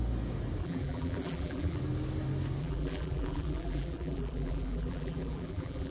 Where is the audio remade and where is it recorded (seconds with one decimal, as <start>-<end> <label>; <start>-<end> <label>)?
0.0-0.6 recorded; 0.6-1.8 remade; 1.8-2.6 recorded; 2.6-5.9 remade